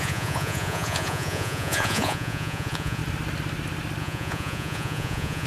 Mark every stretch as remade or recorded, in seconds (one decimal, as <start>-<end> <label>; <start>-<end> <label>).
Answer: 0.0-3.0 remade; 3.0-4.0 recorded; 4.0-5.5 remade